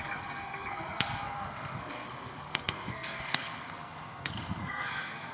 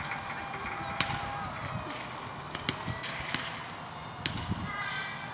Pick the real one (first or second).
second